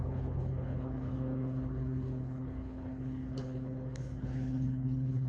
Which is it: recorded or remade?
remade